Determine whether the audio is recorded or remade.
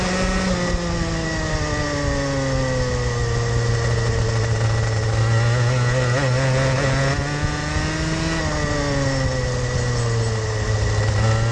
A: recorded